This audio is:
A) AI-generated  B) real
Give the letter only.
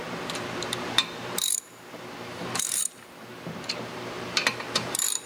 A